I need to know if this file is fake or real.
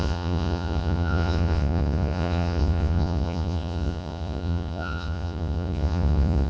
fake